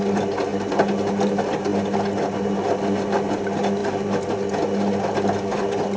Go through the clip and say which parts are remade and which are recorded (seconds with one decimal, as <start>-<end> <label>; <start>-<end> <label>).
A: 0.0-6.0 recorded